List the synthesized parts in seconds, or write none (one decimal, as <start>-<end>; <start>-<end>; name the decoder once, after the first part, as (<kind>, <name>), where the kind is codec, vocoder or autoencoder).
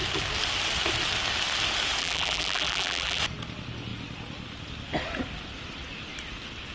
2.0-3.2 (vocoder, BigVGAN v2)